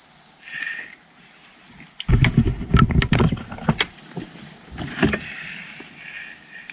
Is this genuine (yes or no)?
yes